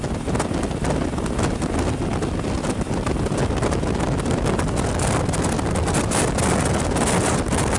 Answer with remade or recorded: recorded